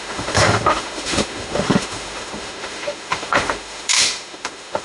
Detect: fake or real fake